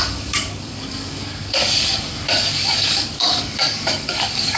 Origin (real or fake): fake